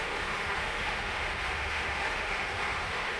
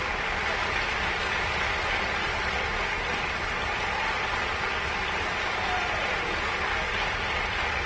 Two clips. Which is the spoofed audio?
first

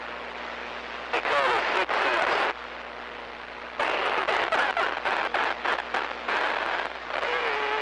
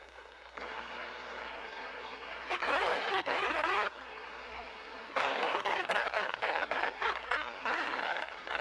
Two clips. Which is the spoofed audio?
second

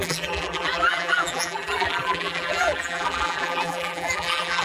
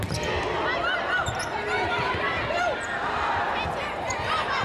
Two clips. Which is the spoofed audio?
first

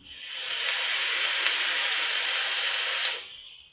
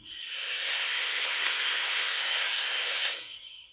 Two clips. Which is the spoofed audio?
second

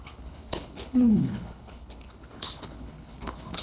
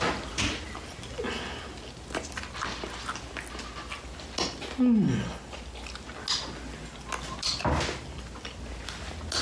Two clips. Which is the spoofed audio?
first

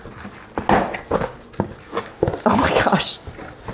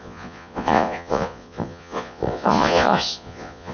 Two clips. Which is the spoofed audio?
second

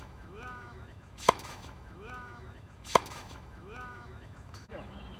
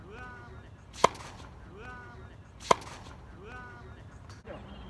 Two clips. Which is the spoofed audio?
first